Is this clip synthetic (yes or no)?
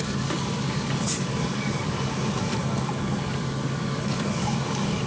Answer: yes